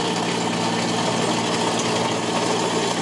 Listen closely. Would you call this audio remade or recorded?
recorded